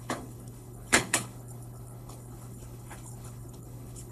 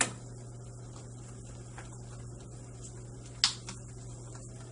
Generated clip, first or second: first